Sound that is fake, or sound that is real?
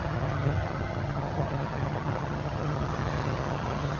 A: fake